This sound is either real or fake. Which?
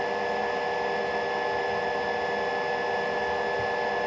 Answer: real